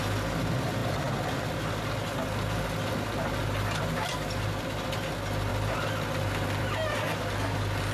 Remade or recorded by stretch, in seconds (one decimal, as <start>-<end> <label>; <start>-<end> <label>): 0.0-7.9 recorded